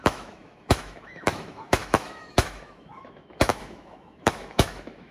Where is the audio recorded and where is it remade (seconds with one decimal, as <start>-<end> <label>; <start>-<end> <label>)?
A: 0.0-5.1 remade